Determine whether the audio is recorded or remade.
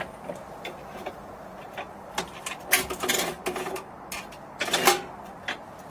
recorded